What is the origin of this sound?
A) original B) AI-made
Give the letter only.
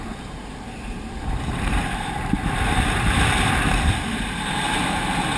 B